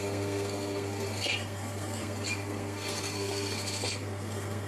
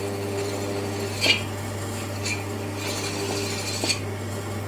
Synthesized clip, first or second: first